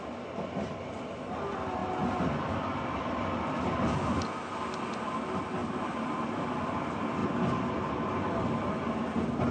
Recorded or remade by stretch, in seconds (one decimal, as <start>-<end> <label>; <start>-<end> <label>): 0.0-9.5 recorded